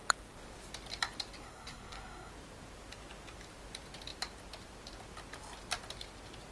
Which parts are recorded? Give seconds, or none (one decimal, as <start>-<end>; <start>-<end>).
0.0-1.4; 2.3-6.5

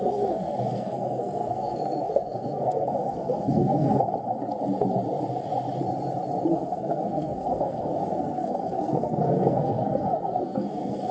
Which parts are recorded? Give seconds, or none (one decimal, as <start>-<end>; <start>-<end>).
4.1-6.5

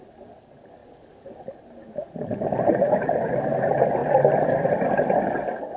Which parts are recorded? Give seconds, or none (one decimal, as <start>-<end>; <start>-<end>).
0.0-5.8

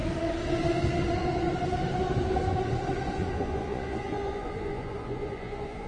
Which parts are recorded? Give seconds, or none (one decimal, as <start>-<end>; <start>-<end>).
0.0-3.1

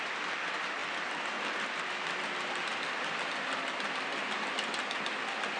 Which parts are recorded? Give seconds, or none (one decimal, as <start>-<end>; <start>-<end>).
0.0-5.6